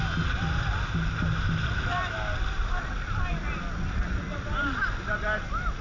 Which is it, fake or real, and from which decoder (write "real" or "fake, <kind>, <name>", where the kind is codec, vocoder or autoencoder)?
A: real